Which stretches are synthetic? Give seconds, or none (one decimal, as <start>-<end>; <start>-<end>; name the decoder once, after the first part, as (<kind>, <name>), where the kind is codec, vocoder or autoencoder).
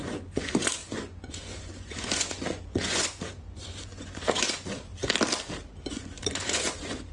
0.0-4.9 (vocoder, Vocos); 5.9-7.1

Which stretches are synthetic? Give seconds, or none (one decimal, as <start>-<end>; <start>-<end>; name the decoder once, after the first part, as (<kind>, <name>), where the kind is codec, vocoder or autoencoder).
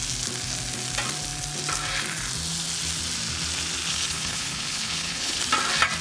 3.9-5.4 (codec, HILCodec)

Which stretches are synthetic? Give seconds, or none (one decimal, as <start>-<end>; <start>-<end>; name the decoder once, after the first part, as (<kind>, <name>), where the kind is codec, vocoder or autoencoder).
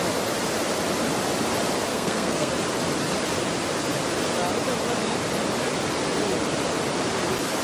1.9-2.5 (codec, SNAC)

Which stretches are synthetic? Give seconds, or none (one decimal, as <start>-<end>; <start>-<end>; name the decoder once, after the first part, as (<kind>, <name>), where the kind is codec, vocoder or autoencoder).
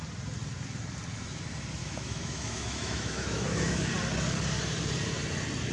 1.8-3.9 (autoencoder, DAC-VAE)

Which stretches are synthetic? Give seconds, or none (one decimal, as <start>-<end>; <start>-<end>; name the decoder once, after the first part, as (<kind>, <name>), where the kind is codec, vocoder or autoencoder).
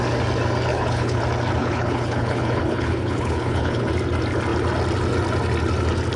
0.7-1.2 (codec, HILCodec); 1.6-3.9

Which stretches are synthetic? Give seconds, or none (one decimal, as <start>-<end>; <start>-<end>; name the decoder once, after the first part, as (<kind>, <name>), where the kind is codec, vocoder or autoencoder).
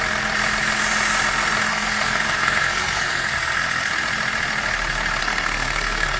1.7-3.9 (codec, SNAC); 5.2-6.2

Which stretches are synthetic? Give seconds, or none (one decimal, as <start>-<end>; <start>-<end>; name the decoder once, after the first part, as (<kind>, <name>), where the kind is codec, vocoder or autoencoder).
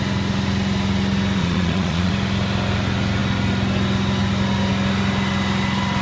1.4-2.1 (vocoder, Vocos)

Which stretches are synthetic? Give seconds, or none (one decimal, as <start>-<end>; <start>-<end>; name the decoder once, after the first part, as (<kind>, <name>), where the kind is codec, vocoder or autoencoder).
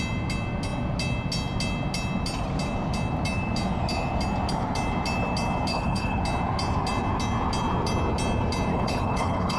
5.7-6.2 (codec, HILCodec); 8.7-9.6